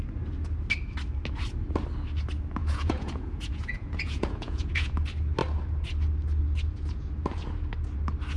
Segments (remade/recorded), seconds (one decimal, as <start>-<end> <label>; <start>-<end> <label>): 0.0-2.6 recorded; 2.6-4.9 remade; 4.9-8.4 recorded